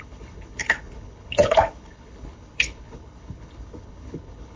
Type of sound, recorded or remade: remade